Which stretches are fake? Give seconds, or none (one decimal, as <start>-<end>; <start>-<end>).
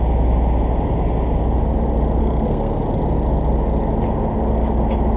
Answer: 2.2-2.8